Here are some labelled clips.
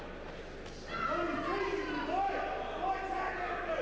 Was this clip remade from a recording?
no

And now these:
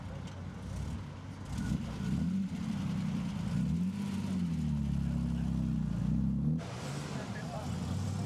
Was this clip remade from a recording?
no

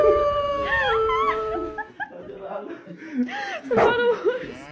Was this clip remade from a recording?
no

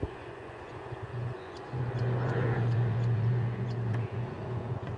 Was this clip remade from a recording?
yes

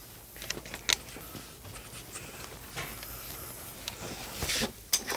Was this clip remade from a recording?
no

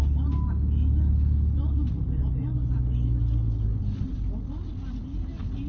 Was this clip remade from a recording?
no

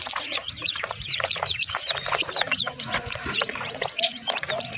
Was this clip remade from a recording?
yes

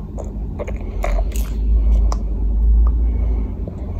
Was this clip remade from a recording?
no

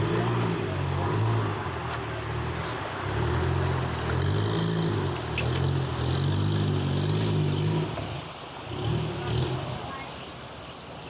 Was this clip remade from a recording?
no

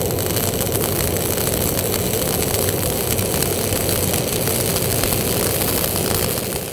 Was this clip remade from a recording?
no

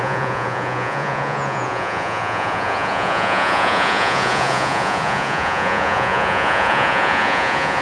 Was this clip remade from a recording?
yes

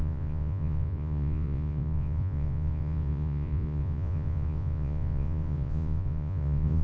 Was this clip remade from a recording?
yes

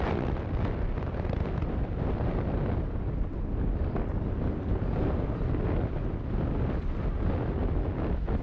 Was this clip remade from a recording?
no